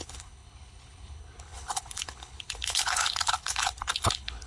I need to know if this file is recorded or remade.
remade